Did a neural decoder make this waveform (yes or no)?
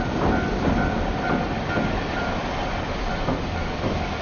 no